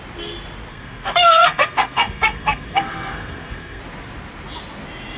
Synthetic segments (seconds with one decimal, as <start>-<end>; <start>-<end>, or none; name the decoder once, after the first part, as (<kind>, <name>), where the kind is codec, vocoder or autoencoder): 0.7-3.8 (codec, SNAC)